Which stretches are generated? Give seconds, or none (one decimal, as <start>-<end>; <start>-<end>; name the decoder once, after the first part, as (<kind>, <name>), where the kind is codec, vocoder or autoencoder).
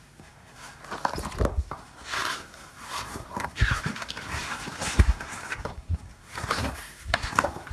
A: 0.0-0.8 (codec, SNAC); 1.5-7.7